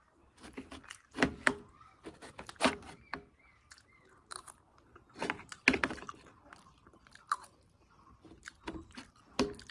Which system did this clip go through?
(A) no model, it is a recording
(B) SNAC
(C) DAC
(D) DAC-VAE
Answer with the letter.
A